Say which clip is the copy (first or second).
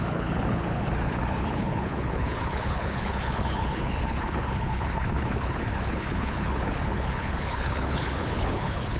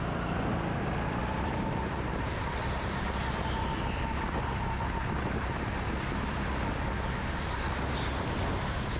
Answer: first